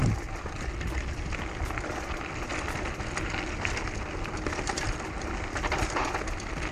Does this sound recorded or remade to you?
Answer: recorded